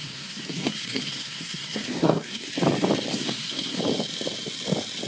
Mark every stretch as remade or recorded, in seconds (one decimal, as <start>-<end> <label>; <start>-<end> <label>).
0.0-2.5 remade; 2.5-3.1 recorded; 3.1-3.8 remade; 3.8-5.1 recorded